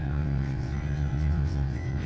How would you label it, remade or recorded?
remade